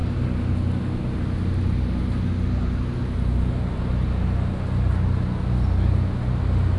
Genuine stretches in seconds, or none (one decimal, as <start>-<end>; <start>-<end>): 0.0-6.8